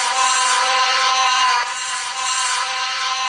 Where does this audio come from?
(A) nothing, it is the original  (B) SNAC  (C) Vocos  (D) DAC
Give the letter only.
C